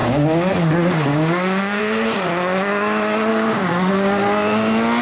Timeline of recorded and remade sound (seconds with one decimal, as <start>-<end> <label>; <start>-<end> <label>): 0.0-0.5 remade; 0.5-1.1 recorded; 1.1-1.8 remade; 1.8-3.3 recorded; 3.3-3.9 remade; 3.9-5.0 recorded